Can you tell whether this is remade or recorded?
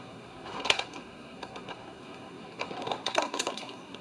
remade